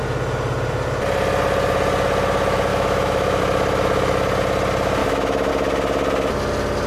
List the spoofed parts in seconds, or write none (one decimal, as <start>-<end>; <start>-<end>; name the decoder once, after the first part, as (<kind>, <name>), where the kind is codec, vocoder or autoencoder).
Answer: 2.7-3.4 (autoencoder, DAC-VAE); 5.0-5.5

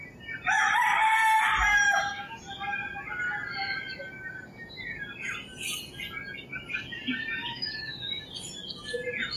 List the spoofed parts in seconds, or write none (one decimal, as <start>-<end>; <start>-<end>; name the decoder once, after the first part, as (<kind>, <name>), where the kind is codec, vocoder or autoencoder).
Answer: 1.7-2.4 (autoencoder, DAC-VAE); 7.4-8.2